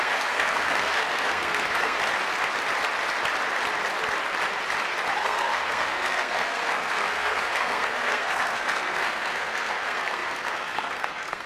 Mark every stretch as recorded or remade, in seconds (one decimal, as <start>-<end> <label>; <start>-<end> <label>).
0.0-2.0 remade; 2.0-5.2 recorded; 5.2-11.5 remade